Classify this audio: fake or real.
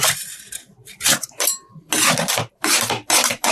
fake